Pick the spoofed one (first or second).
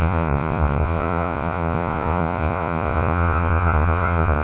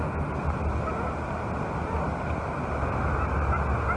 first